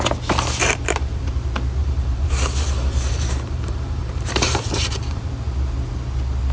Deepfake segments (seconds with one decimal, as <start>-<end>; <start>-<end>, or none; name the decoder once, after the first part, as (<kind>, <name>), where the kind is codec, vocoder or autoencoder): 0.6-1.2 (vocoder, BigVGAN v2); 1.8-5.3